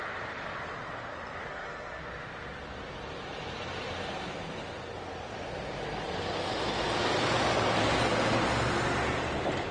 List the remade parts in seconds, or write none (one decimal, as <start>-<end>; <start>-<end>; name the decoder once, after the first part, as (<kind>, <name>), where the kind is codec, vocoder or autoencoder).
1.5-2.0 (codec, SNAC)

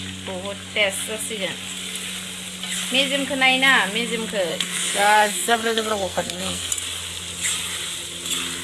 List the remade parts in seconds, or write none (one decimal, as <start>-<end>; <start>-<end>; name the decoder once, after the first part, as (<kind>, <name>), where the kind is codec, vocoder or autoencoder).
4.5-6.7 (codec, SNAC)